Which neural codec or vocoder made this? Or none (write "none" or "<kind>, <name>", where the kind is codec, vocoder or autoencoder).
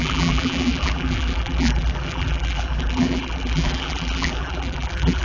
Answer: vocoder, BigVGAN v2